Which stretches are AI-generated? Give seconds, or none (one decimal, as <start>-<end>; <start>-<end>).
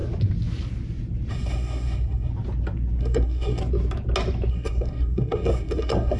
1.3-2.3; 3.0-3.6; 4.5-6.2